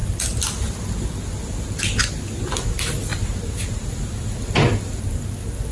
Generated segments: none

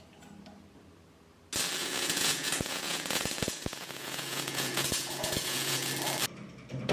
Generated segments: 1.8-5.9 (vocoder, Vocos)

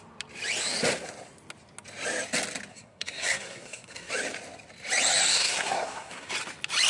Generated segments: 2.7-4.1 (codec, SNAC); 5.3-6.3